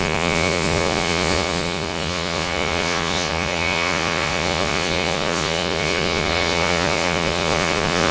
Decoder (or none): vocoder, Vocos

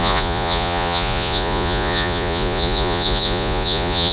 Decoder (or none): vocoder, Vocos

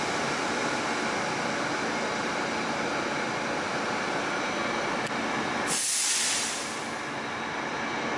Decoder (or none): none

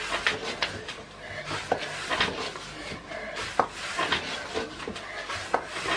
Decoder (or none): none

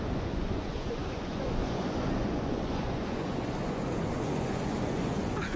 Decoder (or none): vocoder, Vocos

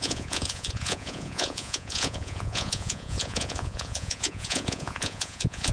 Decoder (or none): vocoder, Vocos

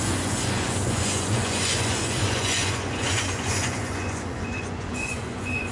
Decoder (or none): vocoder, Vocos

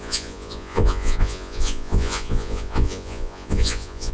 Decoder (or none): vocoder, Vocos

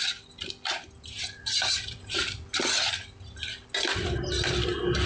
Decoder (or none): none